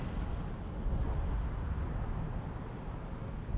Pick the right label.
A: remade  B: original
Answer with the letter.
B